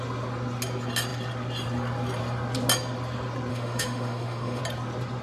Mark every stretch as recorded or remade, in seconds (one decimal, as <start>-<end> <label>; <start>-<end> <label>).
0.0-3.5 recorded; 3.5-4.6 remade; 4.6-5.2 recorded